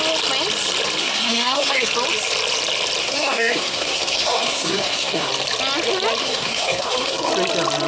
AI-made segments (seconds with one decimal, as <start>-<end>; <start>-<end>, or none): 1.0-1.9; 3.0-5.3; 6.2-7.3